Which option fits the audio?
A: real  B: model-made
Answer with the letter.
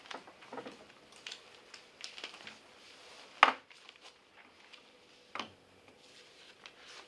A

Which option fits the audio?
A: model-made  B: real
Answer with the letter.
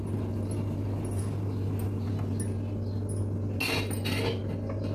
B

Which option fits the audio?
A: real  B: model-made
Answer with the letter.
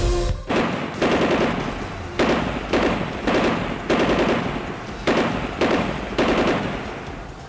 A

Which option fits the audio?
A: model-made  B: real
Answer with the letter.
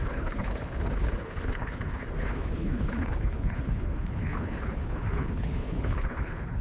A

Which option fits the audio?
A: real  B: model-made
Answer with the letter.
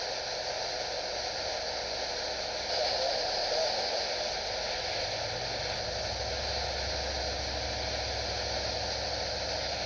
A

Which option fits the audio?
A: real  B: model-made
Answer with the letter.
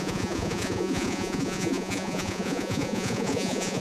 B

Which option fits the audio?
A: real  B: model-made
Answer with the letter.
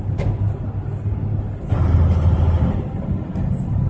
A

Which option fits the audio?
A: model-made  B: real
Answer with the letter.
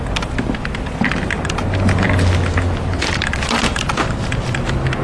B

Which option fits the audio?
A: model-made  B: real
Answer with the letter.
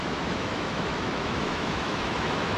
A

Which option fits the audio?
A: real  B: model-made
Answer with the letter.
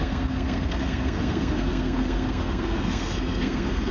B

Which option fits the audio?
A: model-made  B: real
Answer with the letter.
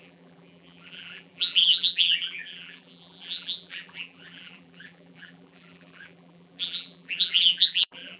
A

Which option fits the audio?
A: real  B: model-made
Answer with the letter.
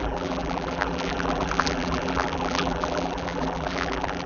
B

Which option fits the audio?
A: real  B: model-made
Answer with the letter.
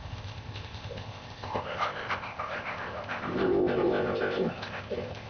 B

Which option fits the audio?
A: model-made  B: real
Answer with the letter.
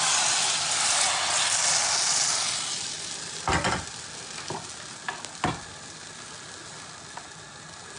B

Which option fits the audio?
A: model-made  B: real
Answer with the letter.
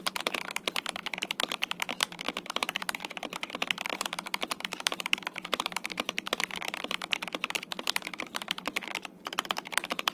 A